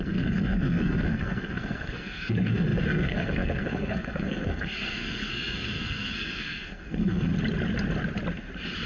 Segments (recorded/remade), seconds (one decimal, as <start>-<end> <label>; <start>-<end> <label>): 0.0-7.3 remade; 7.3-8.9 recorded